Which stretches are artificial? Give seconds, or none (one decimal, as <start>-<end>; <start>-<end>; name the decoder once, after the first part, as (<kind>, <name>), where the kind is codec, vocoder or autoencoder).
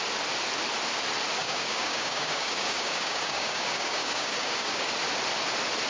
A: 1.4-4.9 (codec, DAC)